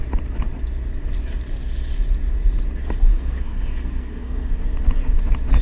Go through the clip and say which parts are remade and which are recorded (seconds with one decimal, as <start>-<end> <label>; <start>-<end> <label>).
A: 0.0-3.1 recorded; 3.1-4.5 remade; 4.5-5.6 recorded

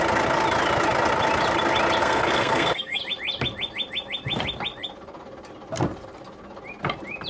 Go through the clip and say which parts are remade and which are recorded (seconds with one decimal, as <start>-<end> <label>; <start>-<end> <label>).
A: 0.0-2.0 recorded; 2.0-3.0 remade; 3.0-7.3 recorded

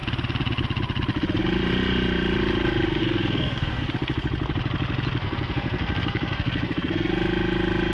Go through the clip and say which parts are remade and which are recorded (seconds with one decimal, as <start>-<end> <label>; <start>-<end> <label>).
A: 0.0-3.0 recorded; 3.0-3.9 remade; 3.9-5.2 recorded; 5.2-7.1 remade; 7.1-7.9 recorded

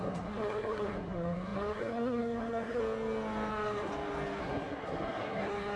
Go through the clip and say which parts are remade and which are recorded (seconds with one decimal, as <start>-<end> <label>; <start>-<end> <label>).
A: 0.0-2.8 remade; 2.8-3.5 recorded; 3.5-3.9 remade; 3.9-4.4 recorded; 4.4-5.8 remade

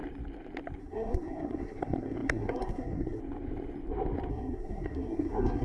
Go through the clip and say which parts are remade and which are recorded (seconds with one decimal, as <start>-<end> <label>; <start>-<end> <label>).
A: 0.0-0.8 recorded; 0.8-3.2 remade; 3.2-4.3 recorded; 4.3-5.6 remade

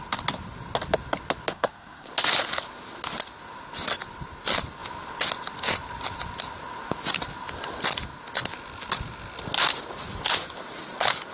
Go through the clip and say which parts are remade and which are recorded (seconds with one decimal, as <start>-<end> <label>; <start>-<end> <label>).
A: 0.0-1.5 recorded; 1.5-2.1 remade; 2.1-11.3 recorded

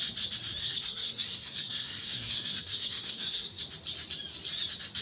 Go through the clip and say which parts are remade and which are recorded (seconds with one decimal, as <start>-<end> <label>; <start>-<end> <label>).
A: 0.0-0.6 recorded; 0.6-3.6 remade; 3.6-5.0 recorded